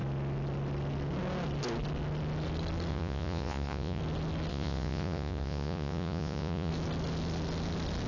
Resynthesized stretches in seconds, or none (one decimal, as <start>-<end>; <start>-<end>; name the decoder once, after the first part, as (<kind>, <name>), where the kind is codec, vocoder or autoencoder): 2.9-4.0 (vocoder, Vocos); 4.5-6.7